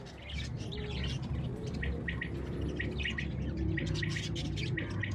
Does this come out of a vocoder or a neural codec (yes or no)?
no